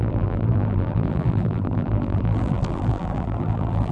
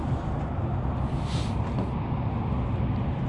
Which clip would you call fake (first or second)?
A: first